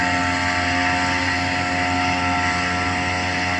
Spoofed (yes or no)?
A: no